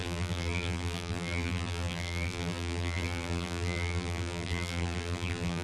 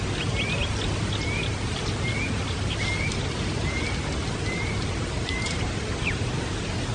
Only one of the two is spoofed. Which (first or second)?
first